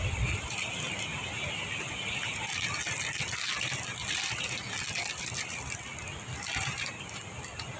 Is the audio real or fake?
real